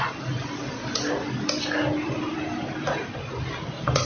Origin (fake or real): real